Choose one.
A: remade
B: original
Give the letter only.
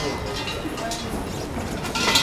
B